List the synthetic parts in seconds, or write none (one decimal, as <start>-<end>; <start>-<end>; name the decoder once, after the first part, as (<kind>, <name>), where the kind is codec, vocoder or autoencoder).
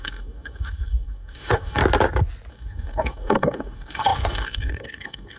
0.0-1.8 (codec, DAC); 2.5-5.4